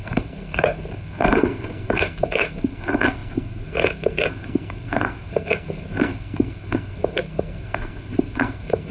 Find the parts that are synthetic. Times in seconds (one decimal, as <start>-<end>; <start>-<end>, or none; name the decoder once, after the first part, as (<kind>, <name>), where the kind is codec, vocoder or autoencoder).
0.0-8.9 (codec, SNAC)

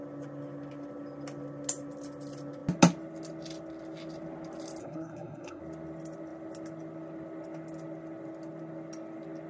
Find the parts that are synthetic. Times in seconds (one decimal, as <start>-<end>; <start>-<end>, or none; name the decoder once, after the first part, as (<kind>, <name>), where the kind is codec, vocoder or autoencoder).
4.8-5.6 (codec, SNAC)

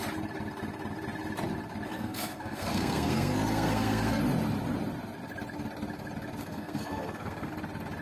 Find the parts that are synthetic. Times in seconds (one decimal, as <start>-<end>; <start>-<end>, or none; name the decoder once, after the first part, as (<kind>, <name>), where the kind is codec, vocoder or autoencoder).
1.9-4.2 (codec, SNAC); 6.4-7.5

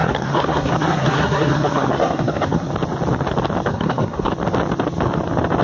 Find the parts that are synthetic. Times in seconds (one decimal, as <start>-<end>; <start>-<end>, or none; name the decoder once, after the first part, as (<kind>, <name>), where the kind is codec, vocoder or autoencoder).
0.0-2.7 (codec, SNAC); 3.7-4.3

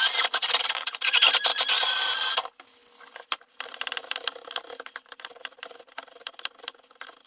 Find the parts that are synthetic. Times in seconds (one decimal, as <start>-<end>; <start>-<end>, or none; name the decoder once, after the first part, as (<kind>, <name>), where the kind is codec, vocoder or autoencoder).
none

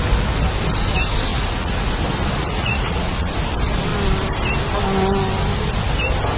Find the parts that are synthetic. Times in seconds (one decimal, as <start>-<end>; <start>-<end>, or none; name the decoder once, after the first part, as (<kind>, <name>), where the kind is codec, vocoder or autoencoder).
1.3-1.9 (vocoder, Vocos); 2.4-3.3

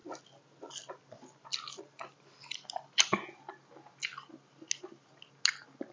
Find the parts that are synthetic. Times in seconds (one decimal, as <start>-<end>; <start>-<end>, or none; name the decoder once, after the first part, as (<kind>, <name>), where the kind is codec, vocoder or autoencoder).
none